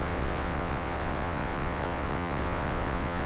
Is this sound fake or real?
fake